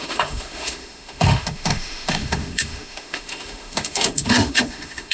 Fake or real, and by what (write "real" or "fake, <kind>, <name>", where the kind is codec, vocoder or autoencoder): fake, autoencoder, DAC-VAE